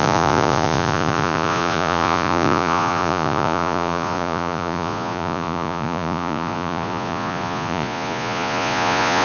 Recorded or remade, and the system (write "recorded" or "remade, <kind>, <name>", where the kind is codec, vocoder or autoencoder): remade, vocoder, Vocos